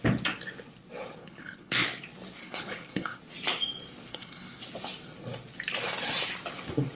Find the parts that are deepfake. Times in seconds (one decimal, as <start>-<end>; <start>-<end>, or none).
1.2-1.7; 2.4-3.2; 4.1-4.6

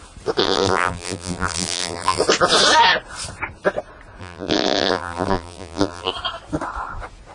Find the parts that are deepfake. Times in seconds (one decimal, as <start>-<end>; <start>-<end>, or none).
0.4-2.2; 4.2-6.1

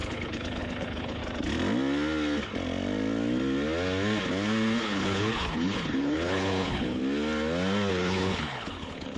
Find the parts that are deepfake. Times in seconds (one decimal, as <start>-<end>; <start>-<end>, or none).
0.0-1.2; 4.8-7.0; 7.9-9.2

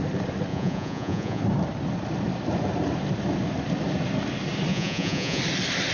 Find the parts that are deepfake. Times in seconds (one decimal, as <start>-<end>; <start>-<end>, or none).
0.5-1.4; 4.7-5.4

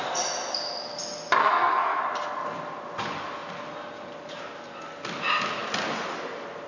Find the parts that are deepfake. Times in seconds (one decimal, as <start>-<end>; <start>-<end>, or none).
1.4-2.0